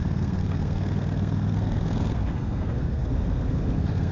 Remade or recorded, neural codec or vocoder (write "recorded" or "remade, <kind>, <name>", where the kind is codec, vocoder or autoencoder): remade, codec, SNAC